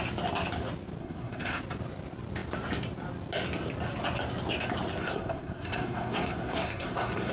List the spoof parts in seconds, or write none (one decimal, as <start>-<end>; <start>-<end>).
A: 1.0-1.6; 5.0-7.3